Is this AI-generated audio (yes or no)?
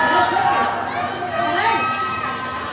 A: no